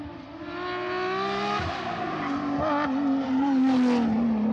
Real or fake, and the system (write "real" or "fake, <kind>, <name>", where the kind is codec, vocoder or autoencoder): real